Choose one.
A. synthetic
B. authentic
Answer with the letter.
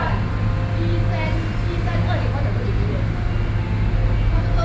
B